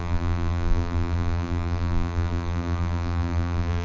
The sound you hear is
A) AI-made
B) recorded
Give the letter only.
A